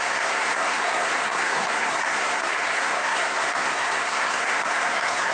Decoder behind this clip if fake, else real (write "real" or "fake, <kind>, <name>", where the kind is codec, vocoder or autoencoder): fake, codec, SNAC